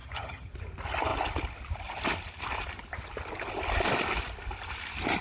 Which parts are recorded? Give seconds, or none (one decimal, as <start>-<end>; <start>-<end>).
0.5-5.2